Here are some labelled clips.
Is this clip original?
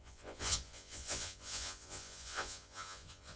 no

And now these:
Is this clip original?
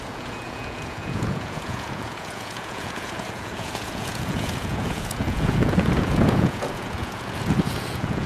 no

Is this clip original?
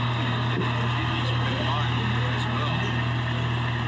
yes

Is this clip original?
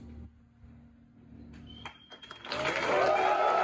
yes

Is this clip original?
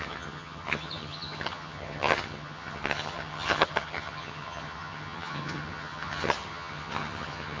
no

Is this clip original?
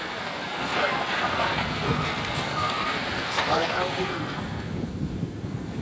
no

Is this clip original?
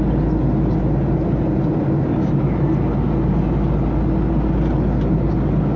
yes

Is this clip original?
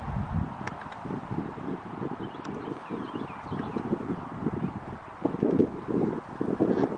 yes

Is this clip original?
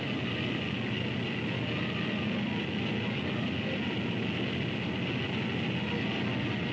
yes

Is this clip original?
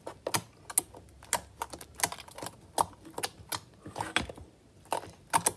yes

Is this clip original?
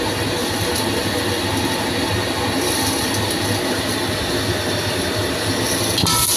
yes